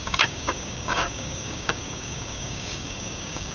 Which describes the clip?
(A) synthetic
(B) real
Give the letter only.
A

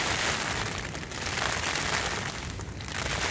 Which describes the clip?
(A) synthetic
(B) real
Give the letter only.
B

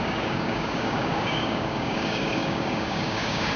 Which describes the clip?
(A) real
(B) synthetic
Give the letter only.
B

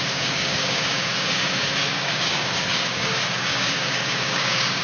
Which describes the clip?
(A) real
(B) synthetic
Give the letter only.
B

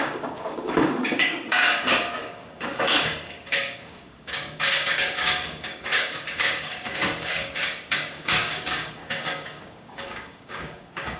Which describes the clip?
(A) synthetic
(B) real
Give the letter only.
A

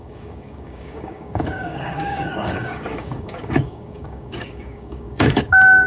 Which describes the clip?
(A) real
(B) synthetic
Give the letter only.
B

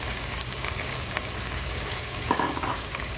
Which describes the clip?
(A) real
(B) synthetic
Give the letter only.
B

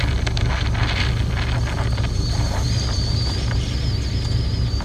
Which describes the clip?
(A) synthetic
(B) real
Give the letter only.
B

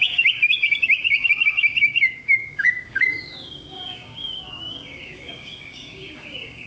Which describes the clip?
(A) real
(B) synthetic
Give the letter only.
B